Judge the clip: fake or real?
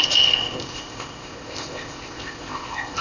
fake